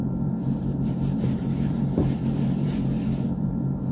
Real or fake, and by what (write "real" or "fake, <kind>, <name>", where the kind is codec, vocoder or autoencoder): fake, vocoder, BigVGAN v2